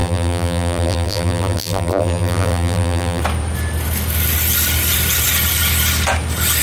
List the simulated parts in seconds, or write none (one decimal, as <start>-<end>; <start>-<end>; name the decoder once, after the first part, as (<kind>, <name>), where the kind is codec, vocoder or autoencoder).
0.0-3.2 (vocoder, BigVGAN v2)